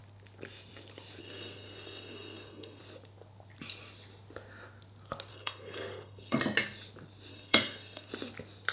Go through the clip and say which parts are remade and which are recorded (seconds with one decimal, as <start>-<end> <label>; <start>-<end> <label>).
0.0-1.2 recorded; 1.2-2.8 remade; 2.8-5.3 recorded; 5.3-6.4 remade; 6.4-7.3 recorded; 7.3-8.1 remade; 8.1-8.7 recorded